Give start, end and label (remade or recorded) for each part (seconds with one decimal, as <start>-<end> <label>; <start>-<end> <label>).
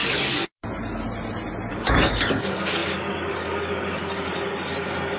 0.0-1.7 recorded; 1.7-5.2 remade